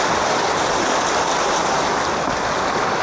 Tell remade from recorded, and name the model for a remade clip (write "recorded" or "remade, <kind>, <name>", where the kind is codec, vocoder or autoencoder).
remade, vocoder, BigVGAN v2